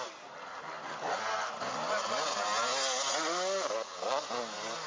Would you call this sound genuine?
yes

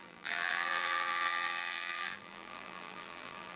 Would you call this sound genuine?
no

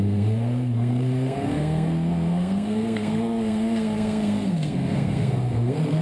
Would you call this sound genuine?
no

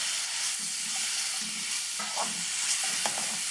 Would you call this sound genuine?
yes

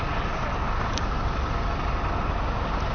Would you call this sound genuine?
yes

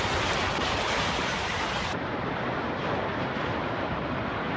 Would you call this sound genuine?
yes